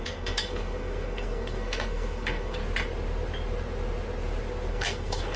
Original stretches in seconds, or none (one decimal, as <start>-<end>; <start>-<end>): 2.6-4.7